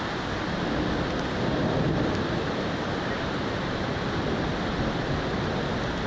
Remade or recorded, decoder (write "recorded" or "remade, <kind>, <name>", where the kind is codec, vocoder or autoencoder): recorded